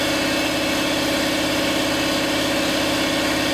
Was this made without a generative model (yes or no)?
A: yes